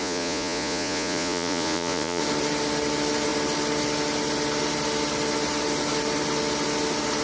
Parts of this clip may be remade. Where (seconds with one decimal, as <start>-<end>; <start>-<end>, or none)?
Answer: 0.0-2.2